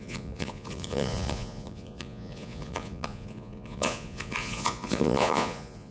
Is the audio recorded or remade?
remade